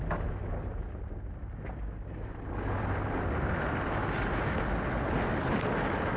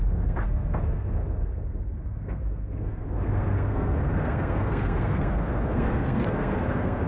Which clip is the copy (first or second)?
second